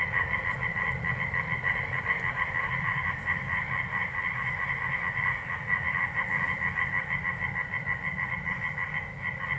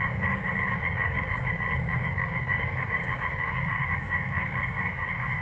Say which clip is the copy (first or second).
second